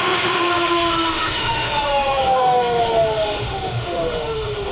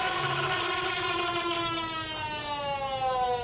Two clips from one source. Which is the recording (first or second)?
second